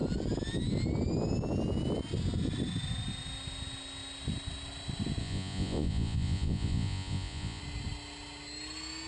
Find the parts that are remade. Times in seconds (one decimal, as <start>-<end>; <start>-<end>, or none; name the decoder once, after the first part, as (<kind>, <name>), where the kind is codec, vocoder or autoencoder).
5.2-7.6 (vocoder, Vocos)